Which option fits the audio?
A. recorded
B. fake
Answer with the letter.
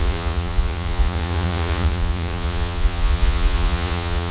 B